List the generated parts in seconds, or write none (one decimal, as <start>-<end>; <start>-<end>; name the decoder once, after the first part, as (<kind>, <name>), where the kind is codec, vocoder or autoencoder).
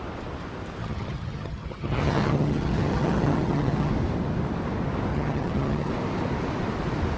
0.8-3.9 (vocoder, HiFi-GAN); 5.1-5.9